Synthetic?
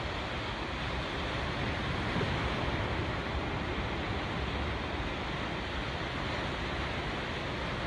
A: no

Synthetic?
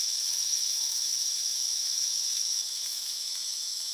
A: yes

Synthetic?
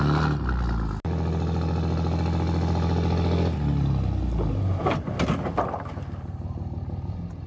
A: no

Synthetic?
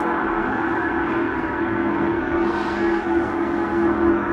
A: yes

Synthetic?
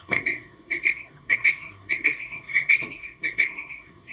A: yes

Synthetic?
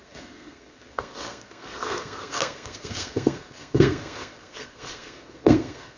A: yes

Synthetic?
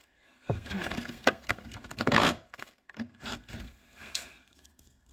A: yes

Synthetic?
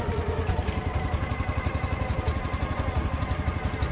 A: no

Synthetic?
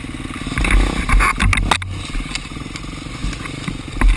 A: no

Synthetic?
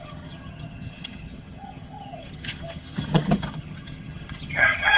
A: yes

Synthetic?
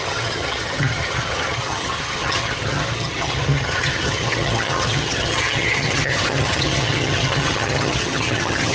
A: yes